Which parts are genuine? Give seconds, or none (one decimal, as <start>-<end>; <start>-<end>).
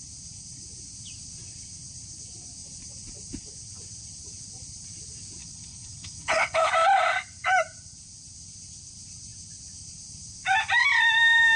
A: 0.0-5.4; 6.7-11.6